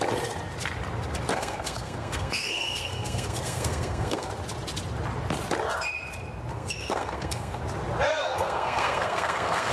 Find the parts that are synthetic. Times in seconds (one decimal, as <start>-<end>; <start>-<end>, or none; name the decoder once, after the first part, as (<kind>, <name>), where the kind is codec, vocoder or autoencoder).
1.3-4.3 (codec, SNAC); 6.5-7.6; 8.1-9.7